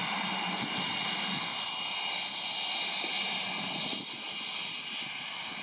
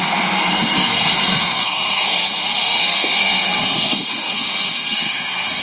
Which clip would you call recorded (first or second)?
first